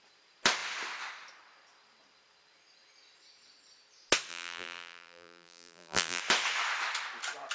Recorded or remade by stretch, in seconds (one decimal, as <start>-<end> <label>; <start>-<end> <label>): 0.0-4.3 recorded; 4.3-6.2 remade; 6.2-7.5 recorded